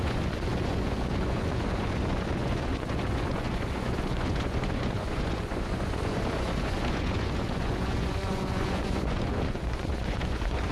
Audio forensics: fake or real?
fake